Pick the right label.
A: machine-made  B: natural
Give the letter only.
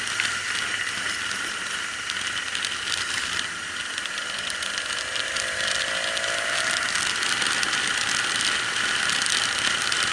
B